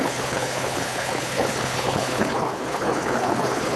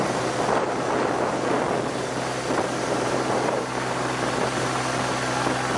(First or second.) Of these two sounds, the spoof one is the first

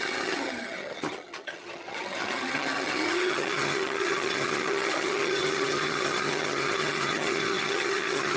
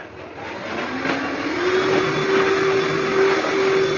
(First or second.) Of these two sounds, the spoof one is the first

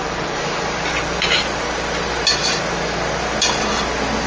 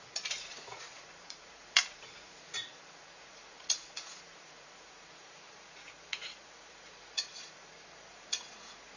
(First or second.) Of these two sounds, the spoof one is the second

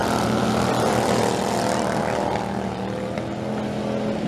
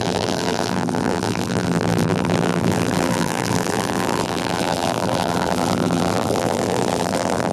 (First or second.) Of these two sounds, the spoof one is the second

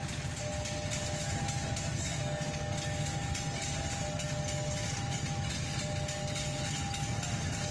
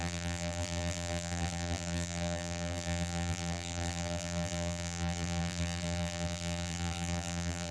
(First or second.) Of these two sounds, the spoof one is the second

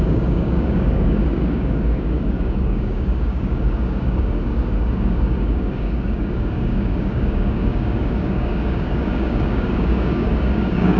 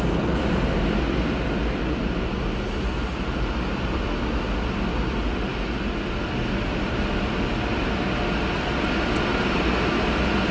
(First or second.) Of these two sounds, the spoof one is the first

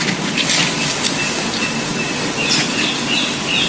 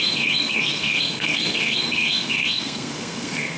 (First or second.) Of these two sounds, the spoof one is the second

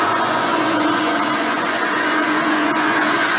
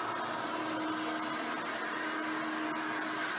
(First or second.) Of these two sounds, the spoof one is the first